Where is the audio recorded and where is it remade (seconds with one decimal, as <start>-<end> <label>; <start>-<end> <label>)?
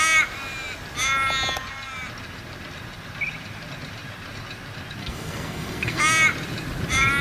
0.0-5.0 recorded; 5.0-6.0 remade; 6.0-7.2 recorded